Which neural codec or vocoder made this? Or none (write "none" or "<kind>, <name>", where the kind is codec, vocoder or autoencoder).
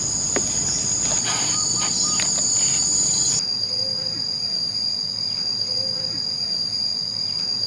none